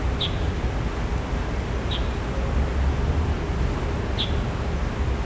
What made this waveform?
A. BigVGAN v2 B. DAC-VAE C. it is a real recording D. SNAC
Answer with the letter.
C